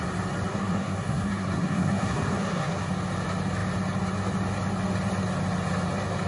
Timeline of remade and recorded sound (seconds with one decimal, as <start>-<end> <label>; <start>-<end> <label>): 0.0-0.5 recorded; 0.5-2.9 remade; 2.9-6.3 recorded